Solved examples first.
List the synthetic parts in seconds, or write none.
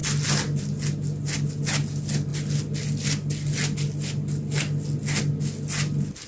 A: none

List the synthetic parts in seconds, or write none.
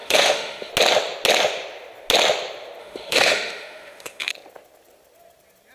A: 0.0-0.7 (autoencoder, DAC-VAE); 2.8-4.3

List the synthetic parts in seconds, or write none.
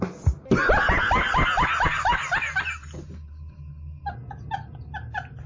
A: none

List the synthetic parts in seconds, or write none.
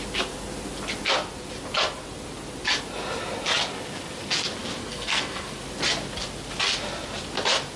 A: 4.8-5.6 (codec, SNAC)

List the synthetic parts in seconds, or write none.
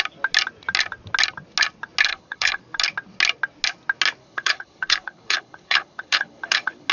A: 2.1-2.6 (codec, HILCodec); 4.2-6.9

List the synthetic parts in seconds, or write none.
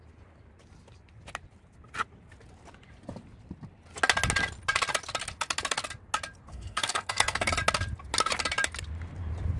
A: 6.5-7.5 (codec, SNAC)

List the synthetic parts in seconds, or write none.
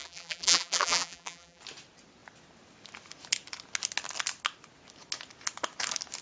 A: 0.0-1.6 (vocoder, BigVGAN v2)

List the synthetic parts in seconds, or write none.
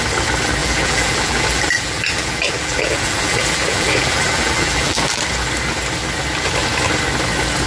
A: 0.6-5.2 (vocoder, BigVGAN v2)